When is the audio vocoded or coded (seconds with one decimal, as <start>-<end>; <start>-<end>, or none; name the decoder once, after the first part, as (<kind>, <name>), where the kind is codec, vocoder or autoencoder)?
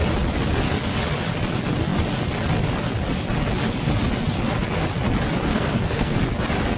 5.5-6.2 (codec, SNAC)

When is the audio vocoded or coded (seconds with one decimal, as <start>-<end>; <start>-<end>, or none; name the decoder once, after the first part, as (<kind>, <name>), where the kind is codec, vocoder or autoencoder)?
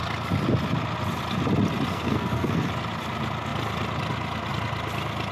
1.9-2.7 (codec, SNAC)